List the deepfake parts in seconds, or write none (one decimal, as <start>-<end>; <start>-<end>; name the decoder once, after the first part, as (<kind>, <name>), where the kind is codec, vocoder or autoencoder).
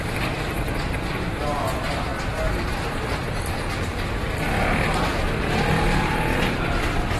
none